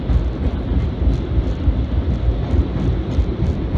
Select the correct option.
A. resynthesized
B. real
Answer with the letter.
B